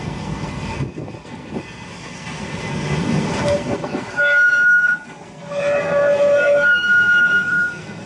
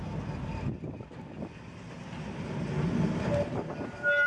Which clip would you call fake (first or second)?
first